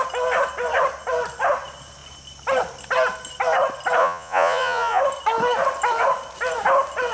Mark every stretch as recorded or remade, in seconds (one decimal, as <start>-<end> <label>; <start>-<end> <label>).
0.0-4.0 recorded; 4.0-5.0 remade; 5.0-7.1 recorded